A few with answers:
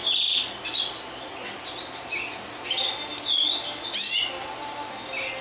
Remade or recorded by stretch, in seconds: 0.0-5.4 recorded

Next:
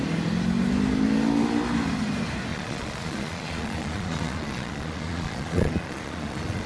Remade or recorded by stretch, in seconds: 0.0-2.5 recorded; 2.5-6.7 remade

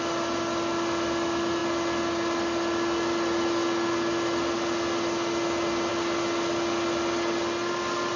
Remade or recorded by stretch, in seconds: 0.0-8.2 recorded

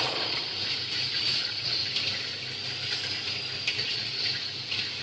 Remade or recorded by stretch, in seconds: 0.0-0.5 remade; 0.5-1.2 recorded; 1.2-1.8 remade; 1.8-3.7 recorded; 3.7-4.3 remade; 4.3-5.0 recorded

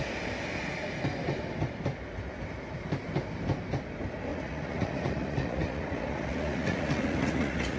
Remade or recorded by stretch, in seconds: 0.0-4.3 recorded; 4.3-7.8 remade

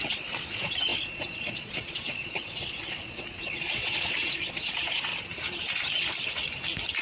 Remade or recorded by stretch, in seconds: 0.0-5.1 remade; 5.1-7.0 recorded

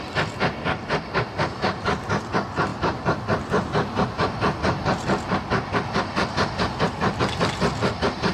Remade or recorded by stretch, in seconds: 0.0-8.3 recorded

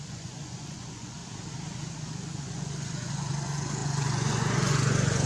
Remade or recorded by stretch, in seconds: 0.0-1.2 remade; 1.2-1.9 recorded; 1.9-5.3 remade